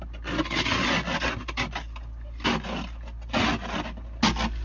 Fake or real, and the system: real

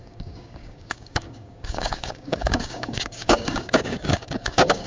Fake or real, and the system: fake, codec, DAC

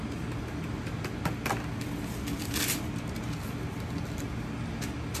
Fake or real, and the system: real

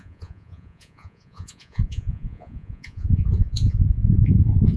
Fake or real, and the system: fake, vocoder, Vocos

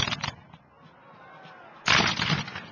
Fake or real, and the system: real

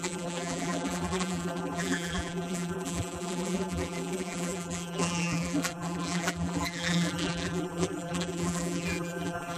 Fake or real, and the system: fake, vocoder, BigVGAN v2